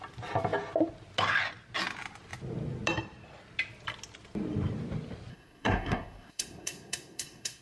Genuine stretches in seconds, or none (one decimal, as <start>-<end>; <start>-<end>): 0.0-5.3